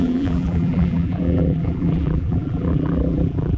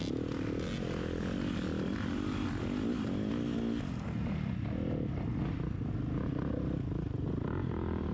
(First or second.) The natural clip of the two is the second